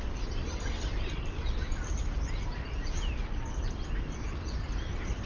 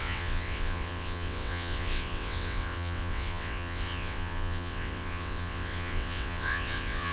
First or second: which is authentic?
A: first